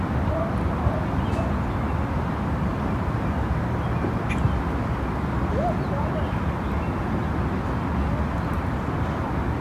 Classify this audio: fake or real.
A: real